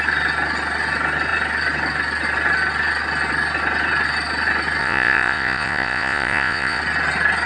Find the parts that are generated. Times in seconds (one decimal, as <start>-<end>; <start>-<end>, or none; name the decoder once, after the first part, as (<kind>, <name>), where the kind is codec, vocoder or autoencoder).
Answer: 4.8-6.8 (vocoder, Vocos)